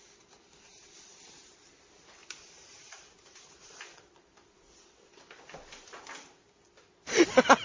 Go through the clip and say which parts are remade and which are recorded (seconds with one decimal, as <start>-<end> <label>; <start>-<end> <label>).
0.0-2.2 recorded; 2.2-4.0 remade; 4.0-7.6 recorded